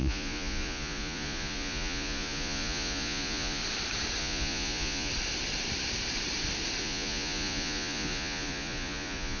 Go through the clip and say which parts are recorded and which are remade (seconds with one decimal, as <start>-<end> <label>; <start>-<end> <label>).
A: 0.0-3.6 remade; 3.6-4.2 recorded; 4.2-5.1 remade; 5.1-6.8 recorded; 6.8-9.4 remade